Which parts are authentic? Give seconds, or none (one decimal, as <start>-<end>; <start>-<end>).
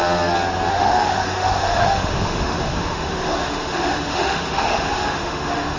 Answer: 0.0-0.7